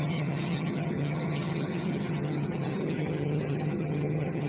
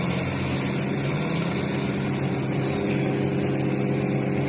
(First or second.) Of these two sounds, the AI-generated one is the first